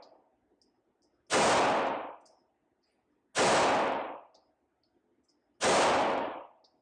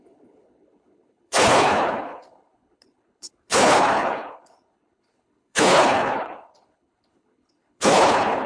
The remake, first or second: second